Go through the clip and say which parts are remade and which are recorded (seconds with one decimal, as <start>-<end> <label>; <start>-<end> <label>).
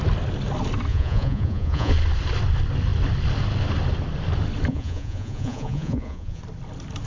0.0-0.9 recorded; 0.9-1.9 remade; 1.9-4.7 recorded; 4.7-6.4 remade; 6.4-7.1 recorded